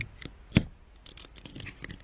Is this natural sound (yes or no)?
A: yes